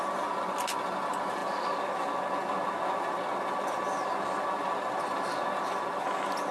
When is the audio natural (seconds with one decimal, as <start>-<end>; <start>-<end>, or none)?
0.0-6.5